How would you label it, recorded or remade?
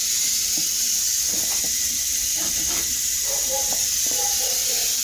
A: recorded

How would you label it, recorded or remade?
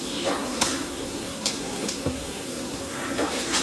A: remade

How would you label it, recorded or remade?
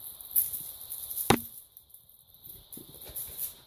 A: recorded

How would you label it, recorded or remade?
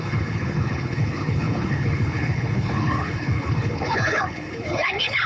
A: remade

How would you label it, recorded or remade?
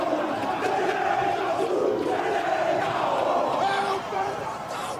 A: remade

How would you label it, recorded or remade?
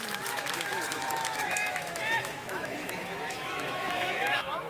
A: remade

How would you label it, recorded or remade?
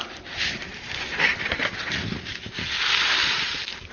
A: remade